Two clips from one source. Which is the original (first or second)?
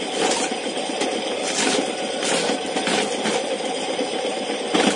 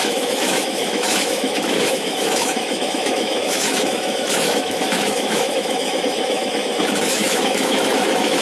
first